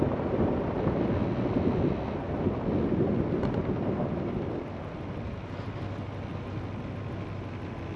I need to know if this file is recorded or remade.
recorded